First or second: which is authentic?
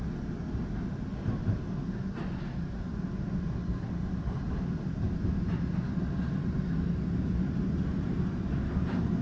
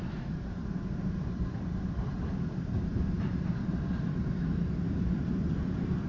first